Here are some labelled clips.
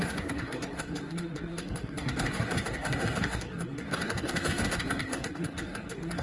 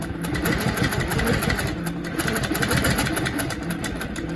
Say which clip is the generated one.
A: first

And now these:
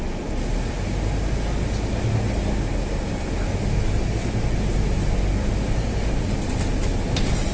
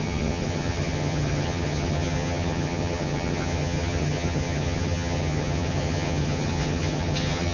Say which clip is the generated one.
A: second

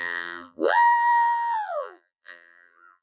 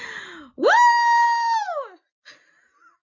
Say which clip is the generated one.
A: first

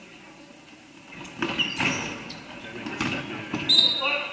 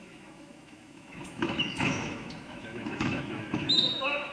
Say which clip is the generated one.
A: second